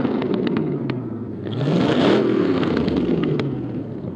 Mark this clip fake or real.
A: fake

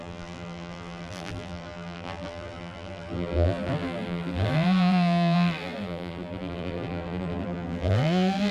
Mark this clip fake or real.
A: fake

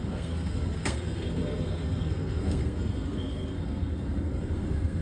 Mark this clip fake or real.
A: fake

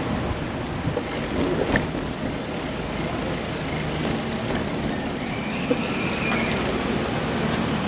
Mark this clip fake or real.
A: real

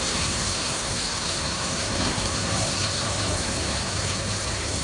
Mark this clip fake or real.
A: fake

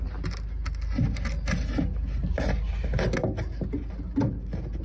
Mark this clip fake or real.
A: real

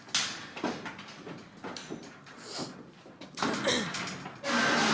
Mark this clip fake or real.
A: real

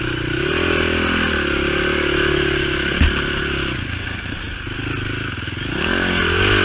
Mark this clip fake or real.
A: real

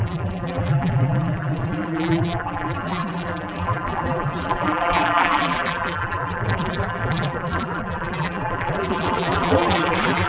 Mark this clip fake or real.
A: fake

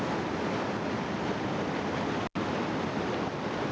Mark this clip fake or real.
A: real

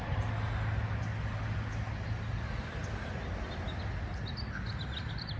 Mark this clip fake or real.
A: real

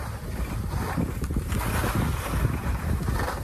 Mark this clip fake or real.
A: real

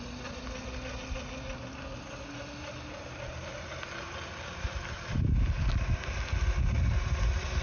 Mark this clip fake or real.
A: real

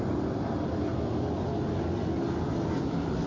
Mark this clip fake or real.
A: real